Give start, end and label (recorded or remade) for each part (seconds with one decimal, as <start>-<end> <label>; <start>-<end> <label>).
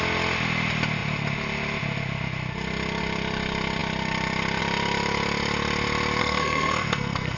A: 0.0-6.2 recorded; 6.2-7.4 remade